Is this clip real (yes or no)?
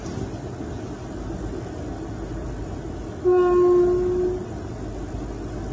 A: yes